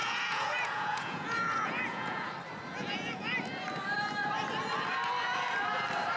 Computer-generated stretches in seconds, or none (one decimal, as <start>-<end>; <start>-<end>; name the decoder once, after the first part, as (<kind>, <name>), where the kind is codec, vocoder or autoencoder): 0.0-2.3 (vocoder, Vocos); 2.7-3.3